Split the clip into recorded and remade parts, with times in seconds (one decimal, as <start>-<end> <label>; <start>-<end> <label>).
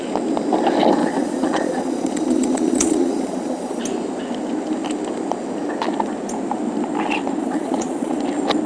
0.0-1.0 recorded; 1.0-3.8 remade; 3.8-7.4 recorded; 7.4-8.2 remade; 8.2-8.7 recorded